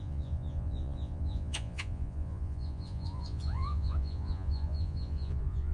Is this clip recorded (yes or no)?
no